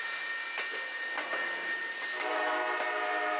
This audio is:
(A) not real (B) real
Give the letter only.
B